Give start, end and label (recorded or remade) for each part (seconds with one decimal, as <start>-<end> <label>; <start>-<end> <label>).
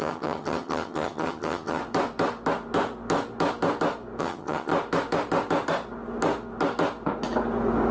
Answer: 0.0-1.8 remade; 1.8-4.2 recorded; 4.2-4.7 remade; 4.7-7.9 recorded